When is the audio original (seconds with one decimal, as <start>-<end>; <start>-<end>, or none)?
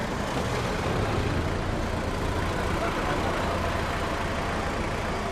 0.0-5.3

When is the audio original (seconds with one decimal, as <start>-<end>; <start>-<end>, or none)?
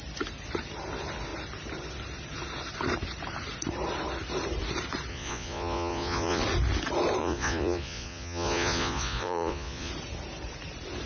0.0-5.1; 6.4-7.2; 9.9-11.1